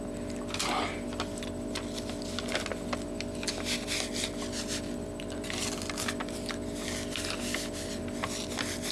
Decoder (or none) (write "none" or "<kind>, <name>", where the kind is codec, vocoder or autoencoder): none